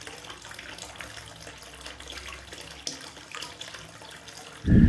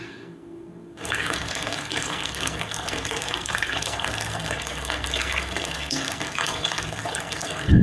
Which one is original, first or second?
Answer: first